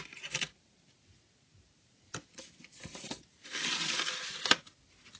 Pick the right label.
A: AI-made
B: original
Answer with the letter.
B